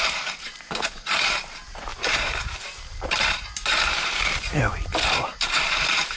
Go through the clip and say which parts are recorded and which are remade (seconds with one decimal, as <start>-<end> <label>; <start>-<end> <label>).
0.0-6.2 remade